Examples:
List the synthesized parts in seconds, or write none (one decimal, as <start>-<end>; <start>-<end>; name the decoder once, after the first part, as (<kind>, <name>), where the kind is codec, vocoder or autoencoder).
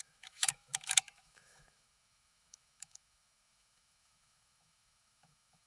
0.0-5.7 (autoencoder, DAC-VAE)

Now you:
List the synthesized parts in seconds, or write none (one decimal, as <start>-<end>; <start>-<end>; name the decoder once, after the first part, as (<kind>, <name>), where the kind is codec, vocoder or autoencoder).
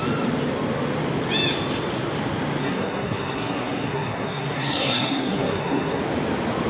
2.6-6.0 (codec, SNAC)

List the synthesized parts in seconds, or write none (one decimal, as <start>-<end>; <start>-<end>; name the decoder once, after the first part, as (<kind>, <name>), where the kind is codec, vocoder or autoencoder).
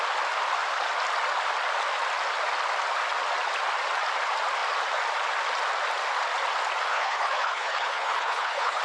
6.9-8.8 (codec, HILCodec)